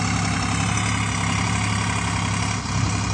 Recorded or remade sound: recorded